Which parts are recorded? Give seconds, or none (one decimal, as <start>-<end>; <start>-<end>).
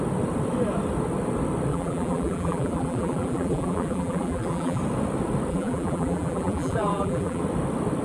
0.0-1.7; 4.8-5.5; 7.4-8.0